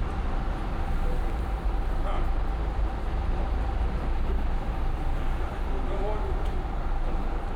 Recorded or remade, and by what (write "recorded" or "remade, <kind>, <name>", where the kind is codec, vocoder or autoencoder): recorded